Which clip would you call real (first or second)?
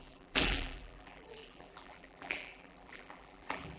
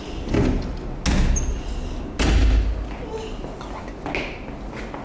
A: second